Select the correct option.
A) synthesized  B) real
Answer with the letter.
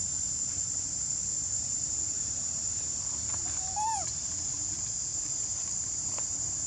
A